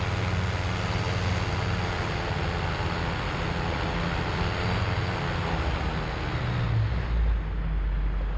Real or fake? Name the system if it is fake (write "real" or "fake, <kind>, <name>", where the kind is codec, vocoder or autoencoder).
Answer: real